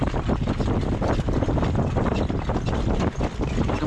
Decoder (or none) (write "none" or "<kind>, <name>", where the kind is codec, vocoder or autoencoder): none